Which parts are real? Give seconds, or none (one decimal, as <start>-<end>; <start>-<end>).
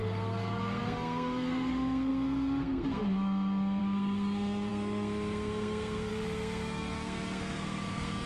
none